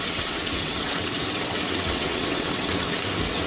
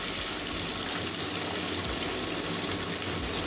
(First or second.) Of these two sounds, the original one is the second